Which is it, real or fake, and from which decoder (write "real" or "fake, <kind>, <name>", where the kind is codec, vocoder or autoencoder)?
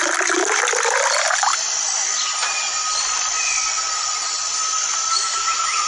real